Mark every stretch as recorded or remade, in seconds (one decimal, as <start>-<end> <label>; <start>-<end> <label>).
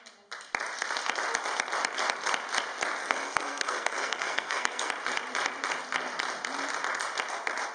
0.0-3.0 recorded; 3.0-4.9 remade; 4.9-7.7 recorded